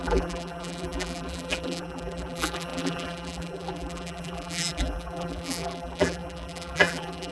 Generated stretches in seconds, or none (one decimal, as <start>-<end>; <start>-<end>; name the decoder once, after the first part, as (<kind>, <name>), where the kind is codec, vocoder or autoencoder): 0.0-7.3 (vocoder, BigVGAN v2)